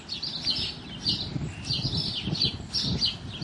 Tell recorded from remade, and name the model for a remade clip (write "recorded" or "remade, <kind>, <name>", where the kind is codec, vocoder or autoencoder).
recorded